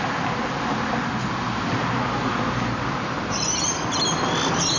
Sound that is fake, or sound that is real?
real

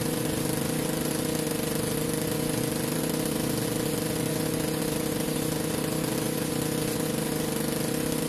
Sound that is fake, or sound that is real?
real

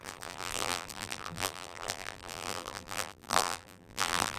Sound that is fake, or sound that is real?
fake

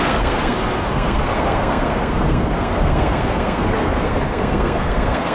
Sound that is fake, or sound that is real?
fake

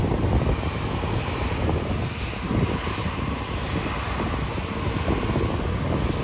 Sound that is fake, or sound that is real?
real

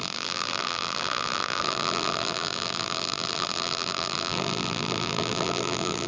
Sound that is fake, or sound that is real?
fake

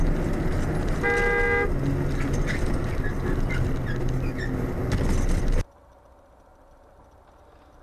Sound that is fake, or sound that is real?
real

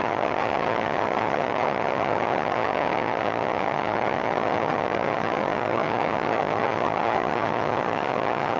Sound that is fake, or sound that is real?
fake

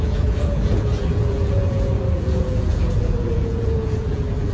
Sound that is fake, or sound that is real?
fake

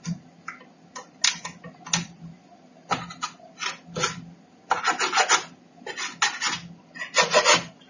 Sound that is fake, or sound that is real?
real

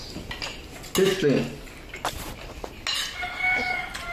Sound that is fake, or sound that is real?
real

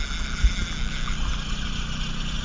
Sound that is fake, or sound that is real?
real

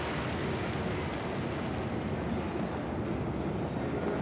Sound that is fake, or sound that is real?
real